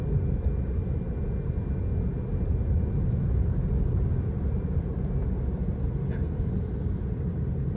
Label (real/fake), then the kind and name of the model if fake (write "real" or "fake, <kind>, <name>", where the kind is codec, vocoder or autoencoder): real